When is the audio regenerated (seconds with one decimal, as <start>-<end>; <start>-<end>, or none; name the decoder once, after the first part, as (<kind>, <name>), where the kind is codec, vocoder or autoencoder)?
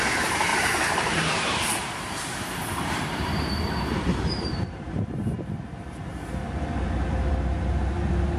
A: 0.5-5.4 (vocoder, BigVGAN v2)